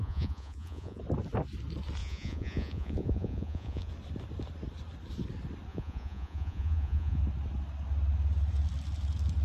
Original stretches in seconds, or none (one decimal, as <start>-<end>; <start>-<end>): 1.0-2.0; 3.9-5.7; 7.2-9.4